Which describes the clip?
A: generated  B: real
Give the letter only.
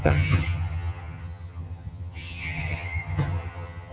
A